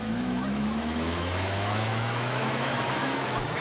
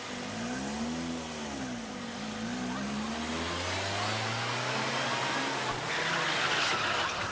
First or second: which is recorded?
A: second